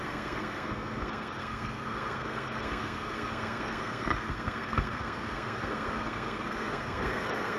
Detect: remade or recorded remade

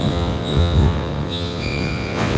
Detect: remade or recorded remade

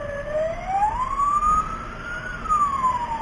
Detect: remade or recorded recorded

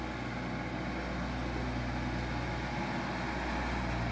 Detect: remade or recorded recorded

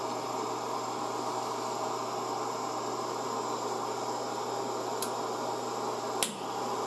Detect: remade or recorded recorded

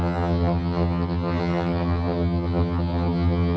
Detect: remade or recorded remade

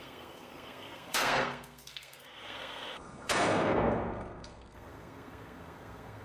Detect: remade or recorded remade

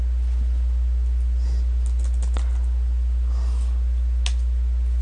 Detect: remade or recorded recorded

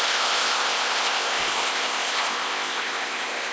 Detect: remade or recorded remade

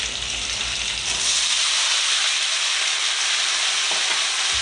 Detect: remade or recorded recorded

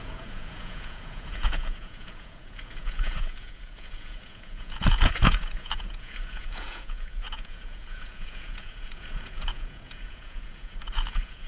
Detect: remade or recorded remade